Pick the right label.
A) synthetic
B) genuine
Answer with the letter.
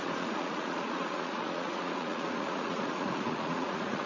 A